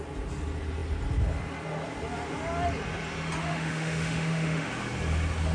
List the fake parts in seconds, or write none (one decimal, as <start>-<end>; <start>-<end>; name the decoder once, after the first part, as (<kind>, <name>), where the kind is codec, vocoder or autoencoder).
3.4-4.7 (autoencoder, DAC-VAE)